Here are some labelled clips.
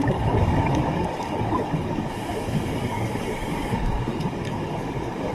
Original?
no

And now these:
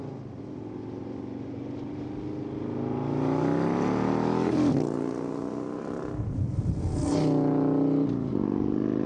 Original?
yes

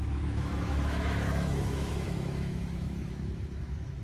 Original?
no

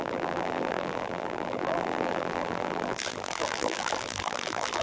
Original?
no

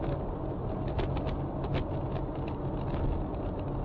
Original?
yes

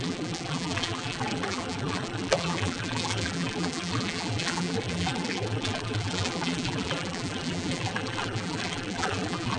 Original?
no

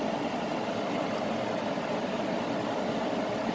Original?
yes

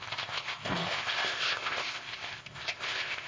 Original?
no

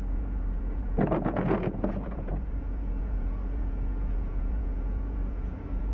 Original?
no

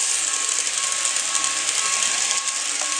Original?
no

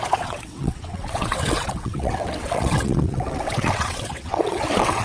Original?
no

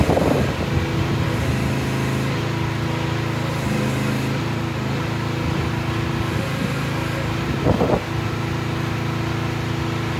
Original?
yes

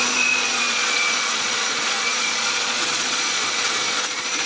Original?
no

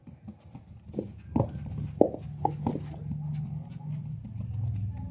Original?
yes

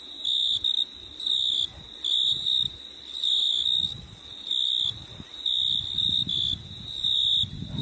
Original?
yes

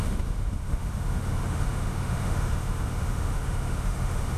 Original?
no